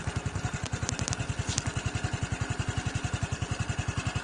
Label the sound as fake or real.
real